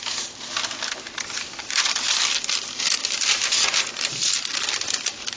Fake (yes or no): no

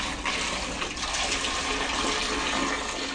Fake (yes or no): no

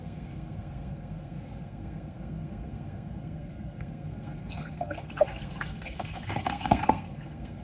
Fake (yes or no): yes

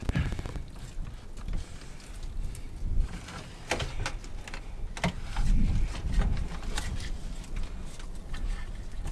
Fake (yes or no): no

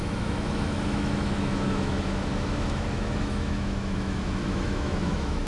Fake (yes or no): yes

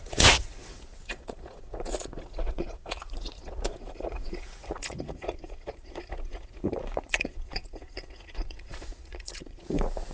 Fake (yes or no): yes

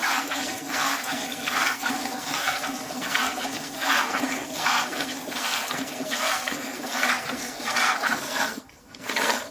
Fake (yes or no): yes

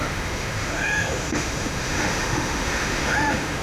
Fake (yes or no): yes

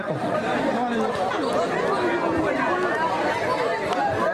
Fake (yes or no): no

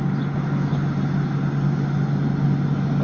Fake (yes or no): no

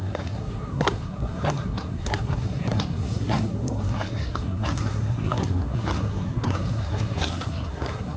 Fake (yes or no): yes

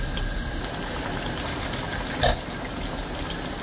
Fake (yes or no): no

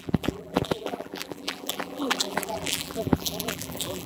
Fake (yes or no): yes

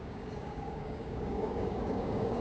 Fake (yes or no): yes